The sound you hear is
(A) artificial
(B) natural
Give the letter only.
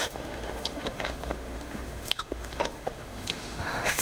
A